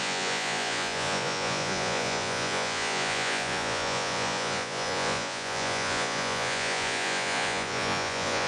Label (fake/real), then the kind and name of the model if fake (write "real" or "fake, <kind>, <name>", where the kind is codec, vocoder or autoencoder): fake, vocoder, Vocos